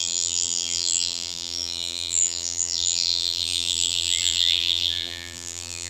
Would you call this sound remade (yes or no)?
yes